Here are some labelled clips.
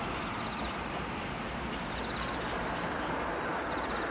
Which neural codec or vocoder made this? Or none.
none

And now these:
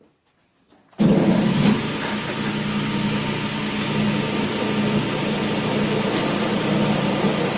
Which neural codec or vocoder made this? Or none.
none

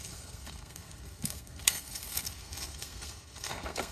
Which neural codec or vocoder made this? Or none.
codec, SNAC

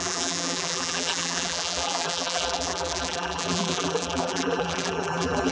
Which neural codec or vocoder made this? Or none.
vocoder, BigVGAN v2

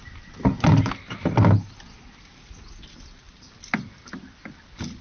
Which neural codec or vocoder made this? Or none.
none